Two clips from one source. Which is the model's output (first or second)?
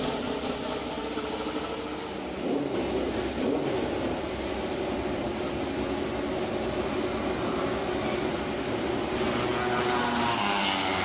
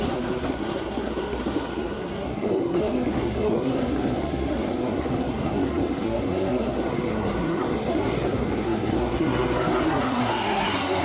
second